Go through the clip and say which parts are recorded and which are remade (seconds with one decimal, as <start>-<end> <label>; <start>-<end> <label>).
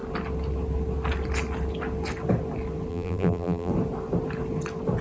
0.0-2.9 recorded; 2.9-3.7 remade; 3.7-5.0 recorded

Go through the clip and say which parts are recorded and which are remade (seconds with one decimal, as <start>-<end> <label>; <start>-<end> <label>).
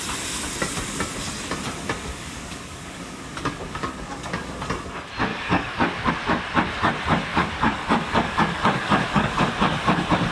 0.0-2.1 recorded; 2.1-4.6 remade; 4.6-5.3 recorded; 5.3-6.1 remade; 6.1-7.3 recorded; 7.3-9.5 remade; 9.5-10.3 recorded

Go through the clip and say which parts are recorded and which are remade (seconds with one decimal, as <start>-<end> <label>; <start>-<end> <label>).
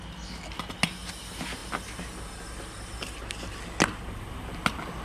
0.0-5.0 recorded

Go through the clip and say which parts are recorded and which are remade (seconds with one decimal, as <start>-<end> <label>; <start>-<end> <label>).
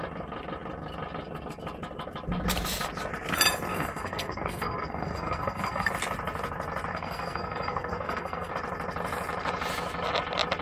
0.0-3.7 recorded; 3.7-5.9 remade; 5.9-6.9 recorded; 6.9-8.5 remade; 8.5-10.6 recorded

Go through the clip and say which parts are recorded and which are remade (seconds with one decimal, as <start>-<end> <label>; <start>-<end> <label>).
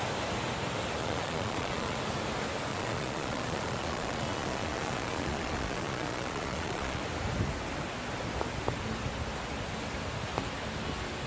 0.0-1.0 recorded; 1.0-2.0 remade; 2.0-2.7 recorded; 2.7-7.0 remade; 7.0-11.3 recorded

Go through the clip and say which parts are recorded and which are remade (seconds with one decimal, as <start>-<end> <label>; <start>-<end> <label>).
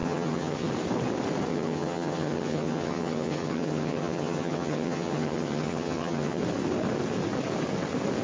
0.0-0.7 remade; 0.7-1.5 recorded; 1.5-6.4 remade; 6.4-8.2 recorded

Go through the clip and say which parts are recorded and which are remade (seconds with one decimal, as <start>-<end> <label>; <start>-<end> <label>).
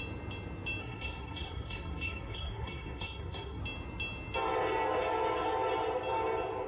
0.0-0.8 recorded; 0.8-3.6 remade; 3.6-6.7 recorded